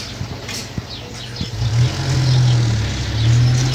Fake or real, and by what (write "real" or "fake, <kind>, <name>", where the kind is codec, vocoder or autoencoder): real